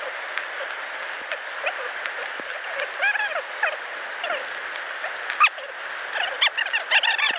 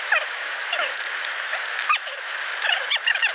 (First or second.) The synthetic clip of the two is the second